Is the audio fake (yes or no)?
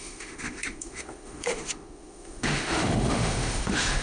yes